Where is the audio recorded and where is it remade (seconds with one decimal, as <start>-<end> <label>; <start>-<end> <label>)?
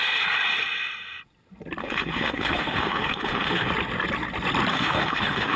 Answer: 0.0-1.8 recorded; 1.8-3.7 remade; 3.7-4.7 recorded; 4.7-5.6 remade